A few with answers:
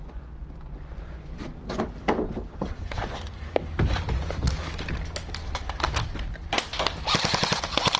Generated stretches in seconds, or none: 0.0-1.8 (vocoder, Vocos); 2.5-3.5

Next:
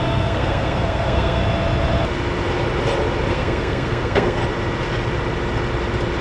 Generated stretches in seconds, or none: 0.0-1.4 (codec, SNAC); 3.3-4.4

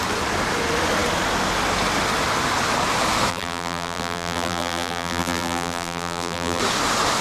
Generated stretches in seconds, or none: 3.3-6.6 (vocoder, BigVGAN v2)